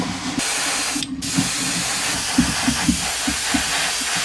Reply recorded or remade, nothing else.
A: recorded